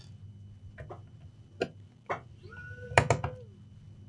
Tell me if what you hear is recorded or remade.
recorded